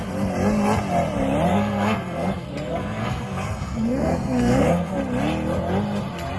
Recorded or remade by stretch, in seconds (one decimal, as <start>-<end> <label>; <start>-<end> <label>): 0.0-1.5 recorded; 1.5-5.0 remade; 5.0-6.4 recorded